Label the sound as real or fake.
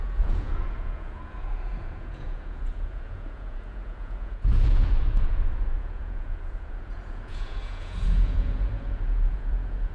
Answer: fake